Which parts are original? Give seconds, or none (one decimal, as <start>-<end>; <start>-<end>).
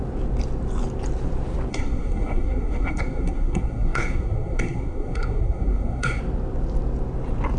0.0-1.7; 6.2-7.6